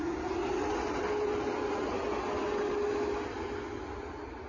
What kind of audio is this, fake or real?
real